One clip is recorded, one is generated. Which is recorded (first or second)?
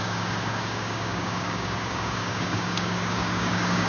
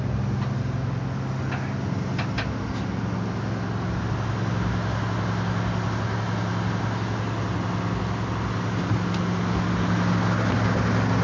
second